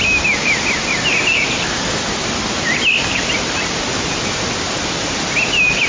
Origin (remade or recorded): recorded